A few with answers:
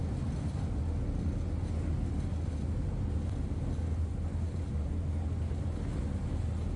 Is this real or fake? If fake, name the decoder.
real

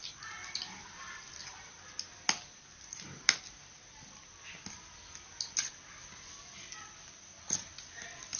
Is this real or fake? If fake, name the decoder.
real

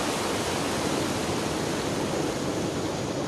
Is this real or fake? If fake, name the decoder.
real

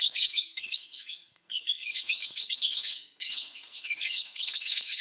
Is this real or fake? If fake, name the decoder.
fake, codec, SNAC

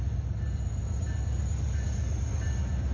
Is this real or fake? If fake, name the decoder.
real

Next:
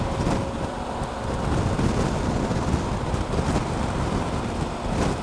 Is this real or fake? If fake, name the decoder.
real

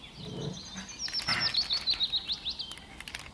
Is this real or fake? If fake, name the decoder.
real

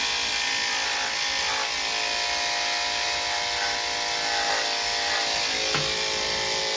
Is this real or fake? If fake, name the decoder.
real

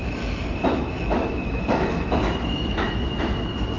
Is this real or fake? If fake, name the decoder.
fake, autoencoder, DAC-VAE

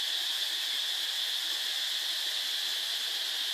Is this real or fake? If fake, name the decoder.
real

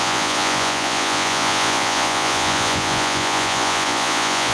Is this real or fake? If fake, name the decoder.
fake, vocoder, Vocos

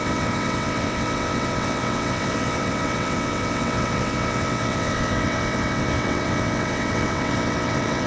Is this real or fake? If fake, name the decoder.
fake, vocoder, WaveNeXt